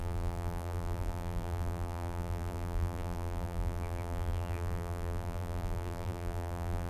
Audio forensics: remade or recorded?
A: remade